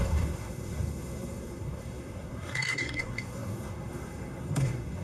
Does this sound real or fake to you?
fake